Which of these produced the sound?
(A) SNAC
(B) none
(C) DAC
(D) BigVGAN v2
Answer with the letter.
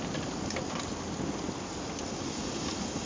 B